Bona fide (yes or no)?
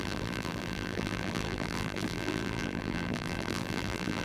no